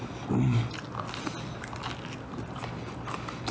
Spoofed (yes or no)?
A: no